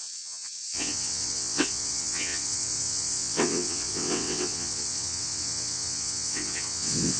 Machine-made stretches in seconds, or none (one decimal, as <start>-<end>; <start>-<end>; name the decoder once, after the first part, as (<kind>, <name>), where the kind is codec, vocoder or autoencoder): 0.0-7.2 (vocoder, WaveNeXt)